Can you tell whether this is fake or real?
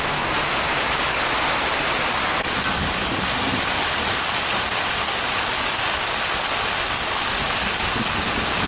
real